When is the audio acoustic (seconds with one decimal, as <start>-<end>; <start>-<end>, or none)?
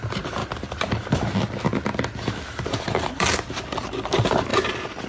0.0-5.1